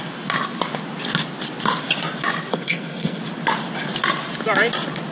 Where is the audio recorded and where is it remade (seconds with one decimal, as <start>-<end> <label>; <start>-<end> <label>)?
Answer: 0.0-2.5 recorded; 2.5-3.2 remade; 3.2-5.1 recorded